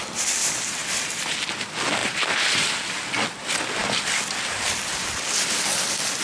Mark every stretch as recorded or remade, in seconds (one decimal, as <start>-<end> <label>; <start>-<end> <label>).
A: 0.0-0.4 recorded; 0.4-1.3 remade; 1.3-2.0 recorded; 2.0-2.8 remade; 2.8-6.2 recorded